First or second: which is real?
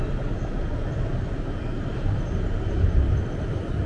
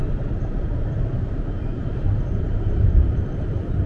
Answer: first